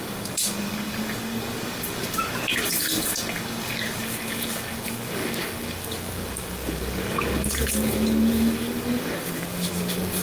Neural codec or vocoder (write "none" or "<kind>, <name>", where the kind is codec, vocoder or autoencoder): codec, DAC